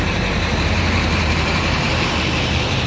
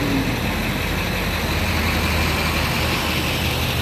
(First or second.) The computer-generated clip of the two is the first